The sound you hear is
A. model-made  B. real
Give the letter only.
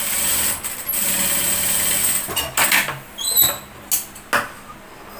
B